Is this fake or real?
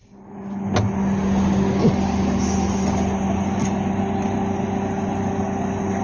real